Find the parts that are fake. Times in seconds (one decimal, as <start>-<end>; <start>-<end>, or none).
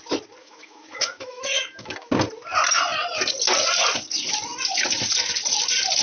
0.4-2.1